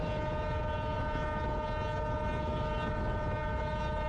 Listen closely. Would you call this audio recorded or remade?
recorded